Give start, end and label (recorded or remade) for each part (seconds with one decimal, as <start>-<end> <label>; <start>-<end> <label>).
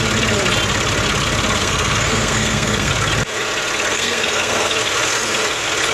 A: 0.0-1.6 recorded; 1.6-2.9 remade; 2.9-3.9 recorded; 3.9-4.7 remade; 4.7-5.9 recorded